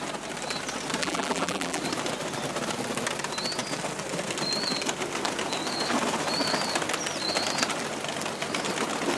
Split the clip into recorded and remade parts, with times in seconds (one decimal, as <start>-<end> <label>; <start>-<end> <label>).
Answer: 0.0-1.0 recorded; 1.0-1.8 remade; 1.8-9.2 recorded